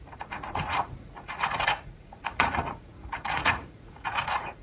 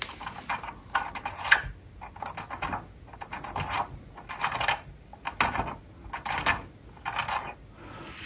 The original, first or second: second